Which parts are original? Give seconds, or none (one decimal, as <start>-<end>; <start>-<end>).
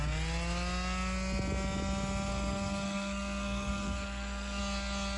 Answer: 0.0-2.3; 4.6-5.2